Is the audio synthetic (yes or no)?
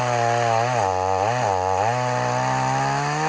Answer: no